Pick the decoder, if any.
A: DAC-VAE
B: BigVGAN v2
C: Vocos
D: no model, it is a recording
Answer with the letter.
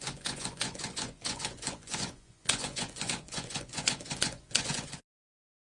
C